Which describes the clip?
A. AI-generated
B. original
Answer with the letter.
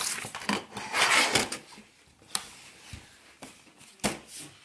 B